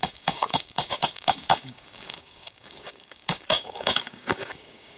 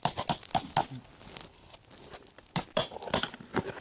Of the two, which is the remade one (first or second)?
first